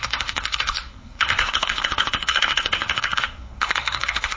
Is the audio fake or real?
fake